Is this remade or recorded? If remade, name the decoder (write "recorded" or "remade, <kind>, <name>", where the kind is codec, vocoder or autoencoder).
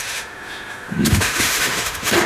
remade, autoencoder, DAC-VAE